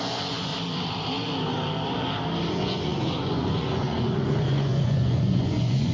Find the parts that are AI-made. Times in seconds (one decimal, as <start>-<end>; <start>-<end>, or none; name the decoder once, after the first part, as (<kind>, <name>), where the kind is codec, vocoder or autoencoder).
0.0-0.5 (vocoder, Vocos); 2.5-5.9